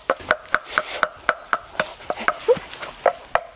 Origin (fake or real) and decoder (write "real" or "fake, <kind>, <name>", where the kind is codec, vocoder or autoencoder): real